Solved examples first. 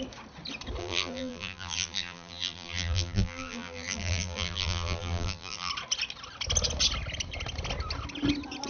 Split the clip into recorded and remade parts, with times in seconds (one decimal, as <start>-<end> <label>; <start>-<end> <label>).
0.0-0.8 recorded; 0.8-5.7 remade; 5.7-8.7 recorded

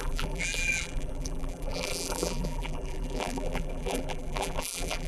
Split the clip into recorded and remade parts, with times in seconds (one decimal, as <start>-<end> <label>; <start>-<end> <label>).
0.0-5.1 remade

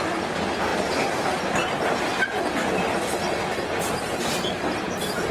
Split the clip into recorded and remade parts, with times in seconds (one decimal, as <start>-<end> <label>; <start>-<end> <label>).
0.0-5.3 recorded

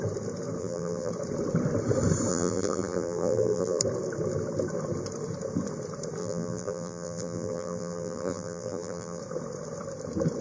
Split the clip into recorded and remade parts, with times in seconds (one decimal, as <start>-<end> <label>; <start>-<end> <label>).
0.0-0.6 recorded; 0.6-1.1 remade; 1.1-2.3 recorded; 2.3-3.8 remade; 3.8-6.2 recorded; 6.2-9.2 remade; 9.2-10.4 recorded